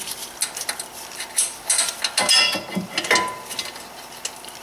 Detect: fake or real real